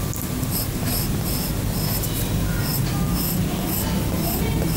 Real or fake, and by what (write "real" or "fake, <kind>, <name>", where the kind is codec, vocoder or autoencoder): real